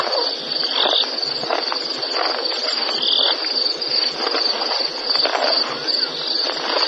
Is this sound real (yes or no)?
yes